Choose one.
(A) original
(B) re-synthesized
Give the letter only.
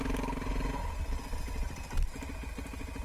A